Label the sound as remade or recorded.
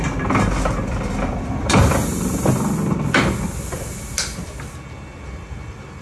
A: recorded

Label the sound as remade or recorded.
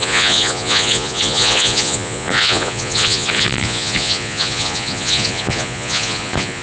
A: remade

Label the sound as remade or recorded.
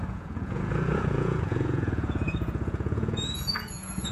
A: remade